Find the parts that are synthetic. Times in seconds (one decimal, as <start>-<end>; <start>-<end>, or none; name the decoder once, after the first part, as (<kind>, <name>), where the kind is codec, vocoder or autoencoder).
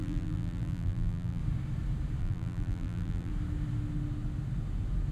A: 0.0-1.4 (vocoder, BigVGAN v2); 2.2-3.3